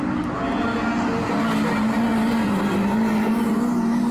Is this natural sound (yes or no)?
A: yes